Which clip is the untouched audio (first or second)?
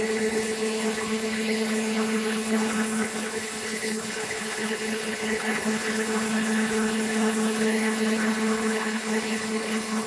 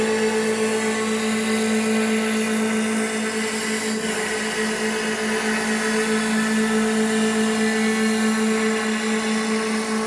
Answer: second